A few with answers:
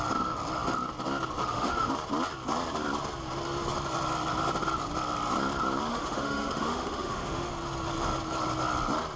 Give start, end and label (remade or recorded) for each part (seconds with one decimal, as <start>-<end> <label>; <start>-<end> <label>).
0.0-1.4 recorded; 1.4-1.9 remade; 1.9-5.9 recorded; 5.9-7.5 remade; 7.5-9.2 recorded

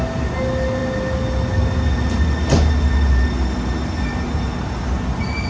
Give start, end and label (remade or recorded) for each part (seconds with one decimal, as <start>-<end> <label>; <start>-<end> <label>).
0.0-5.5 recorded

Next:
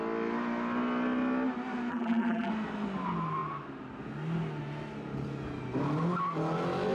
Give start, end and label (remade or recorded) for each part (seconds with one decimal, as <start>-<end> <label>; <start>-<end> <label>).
0.0-1.9 recorded; 1.9-2.5 remade; 2.5-6.9 recorded

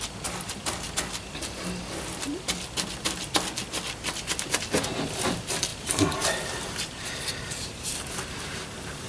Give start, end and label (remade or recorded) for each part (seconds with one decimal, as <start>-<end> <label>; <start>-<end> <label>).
0.0-5.7 recorded; 5.7-9.1 remade

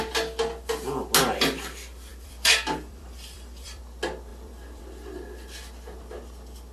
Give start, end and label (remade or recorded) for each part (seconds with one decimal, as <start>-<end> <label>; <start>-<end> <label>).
0.0-2.1 recorded; 2.1-3.8 remade; 3.8-4.3 recorded; 4.3-4.8 remade; 4.8-6.7 recorded

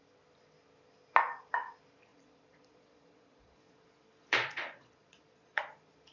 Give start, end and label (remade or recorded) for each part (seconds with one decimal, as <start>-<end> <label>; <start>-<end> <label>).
0.0-2.1 recorded; 2.1-5.6 remade; 5.6-6.1 recorded

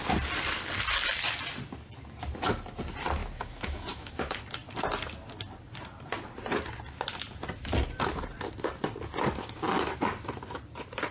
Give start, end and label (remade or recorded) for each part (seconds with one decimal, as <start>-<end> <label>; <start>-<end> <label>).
0.0-3.2 recorded; 3.2-4.4 remade; 4.4-11.1 recorded